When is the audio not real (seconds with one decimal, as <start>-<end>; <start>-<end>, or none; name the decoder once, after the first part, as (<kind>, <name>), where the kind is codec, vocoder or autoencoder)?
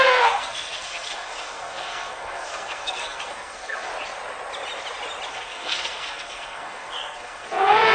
0.0-3.9 (codec, SNAC); 5.3-7.9